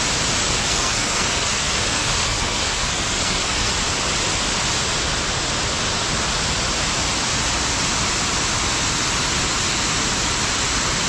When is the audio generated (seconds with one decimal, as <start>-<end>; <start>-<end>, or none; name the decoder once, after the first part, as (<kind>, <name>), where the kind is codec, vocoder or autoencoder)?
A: 0.4-3.7 (codec, SNAC)